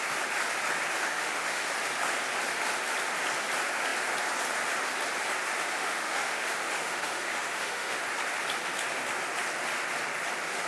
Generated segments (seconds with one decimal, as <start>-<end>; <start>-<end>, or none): 1.0-1.7; 5.6-8.0